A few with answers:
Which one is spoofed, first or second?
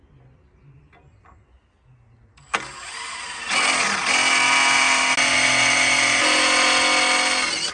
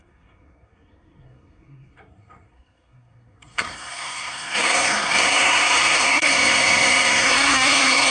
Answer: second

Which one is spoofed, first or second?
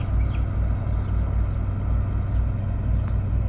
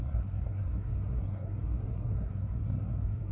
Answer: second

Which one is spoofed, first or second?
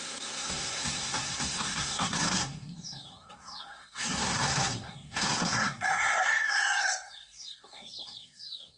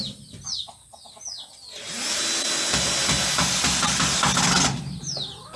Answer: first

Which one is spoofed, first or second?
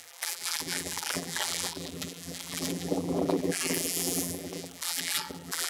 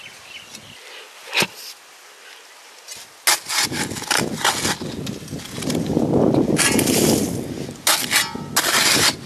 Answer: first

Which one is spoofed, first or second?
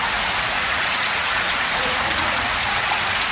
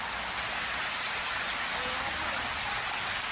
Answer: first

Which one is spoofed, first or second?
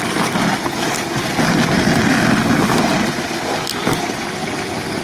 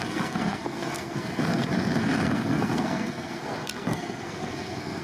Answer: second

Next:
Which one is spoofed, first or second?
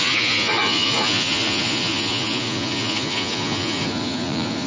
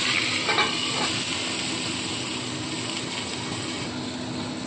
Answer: first